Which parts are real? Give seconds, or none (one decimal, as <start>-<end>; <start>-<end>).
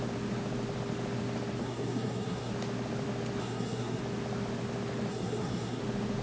0.0-1.6; 2.5-3.4; 4.0-5.1; 5.8-6.2